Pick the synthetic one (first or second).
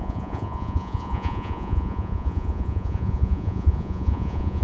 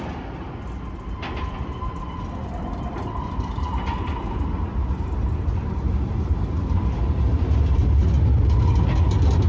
first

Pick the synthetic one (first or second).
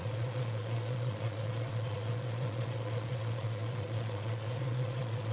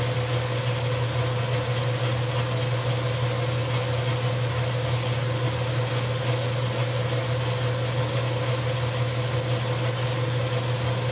first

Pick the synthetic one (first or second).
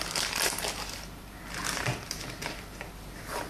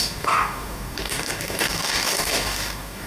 second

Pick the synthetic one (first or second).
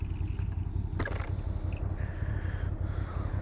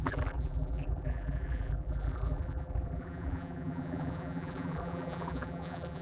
second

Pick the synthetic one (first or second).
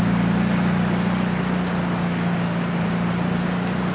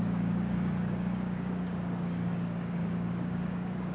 second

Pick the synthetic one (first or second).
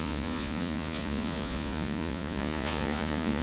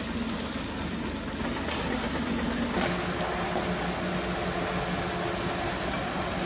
first